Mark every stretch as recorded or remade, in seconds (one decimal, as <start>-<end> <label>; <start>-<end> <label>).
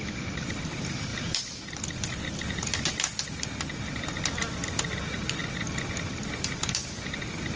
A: 0.0-7.6 recorded